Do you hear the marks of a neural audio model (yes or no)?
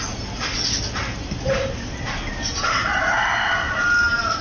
no